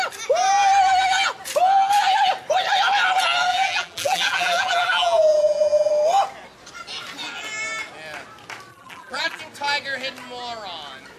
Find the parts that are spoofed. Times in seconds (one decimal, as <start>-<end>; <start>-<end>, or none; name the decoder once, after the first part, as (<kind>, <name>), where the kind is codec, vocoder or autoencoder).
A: 3.5-5.9 (vocoder, BigVGAN v2); 8.7-9.4